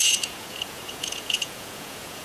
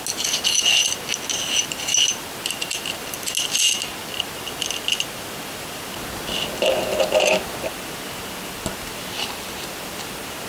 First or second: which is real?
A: second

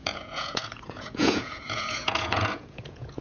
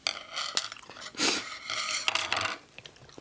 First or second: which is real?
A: second